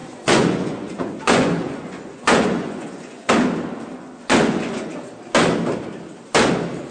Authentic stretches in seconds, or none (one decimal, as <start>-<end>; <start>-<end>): 3.3-3.9; 5.1-6.9